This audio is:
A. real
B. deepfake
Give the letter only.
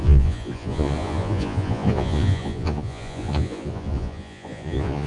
B